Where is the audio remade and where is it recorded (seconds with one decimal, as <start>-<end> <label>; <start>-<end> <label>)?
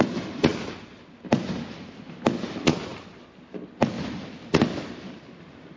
0.0-5.8 recorded